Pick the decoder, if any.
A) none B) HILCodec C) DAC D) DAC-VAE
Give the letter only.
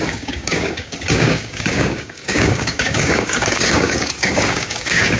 C